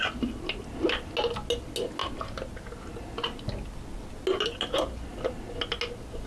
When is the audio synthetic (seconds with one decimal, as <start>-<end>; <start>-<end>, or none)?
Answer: none

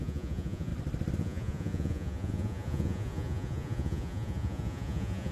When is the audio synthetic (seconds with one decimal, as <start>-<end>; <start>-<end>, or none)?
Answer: 0.0-0.7; 1.2-5.3